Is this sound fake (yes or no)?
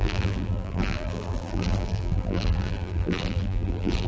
yes